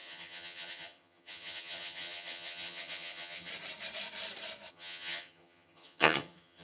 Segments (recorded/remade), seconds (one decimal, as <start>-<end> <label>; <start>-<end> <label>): 0.0-3.5 remade; 3.5-4.7 recorded; 4.7-6.6 remade